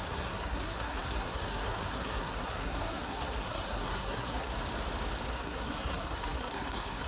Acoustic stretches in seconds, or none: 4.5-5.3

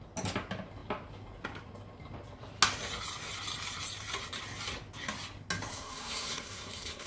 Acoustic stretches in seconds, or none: 0.0-5.7

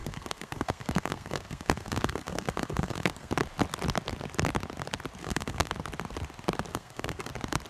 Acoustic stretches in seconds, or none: 3.3-5.2; 5.7-6.7; 7.3-7.7